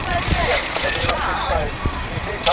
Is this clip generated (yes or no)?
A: yes